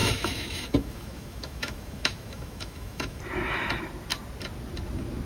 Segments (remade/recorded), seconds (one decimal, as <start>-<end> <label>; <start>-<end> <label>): 0.0-3.2 remade; 3.2-5.3 recorded